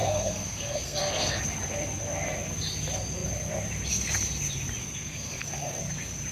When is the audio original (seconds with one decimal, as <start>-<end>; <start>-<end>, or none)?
1.4-4.8; 5.8-6.3